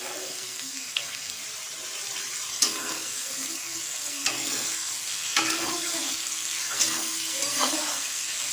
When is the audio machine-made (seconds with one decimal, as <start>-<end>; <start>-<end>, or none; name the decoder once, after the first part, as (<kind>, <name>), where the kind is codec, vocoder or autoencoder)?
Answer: 0.0-1.4 (codec, SNAC); 2.5-8.5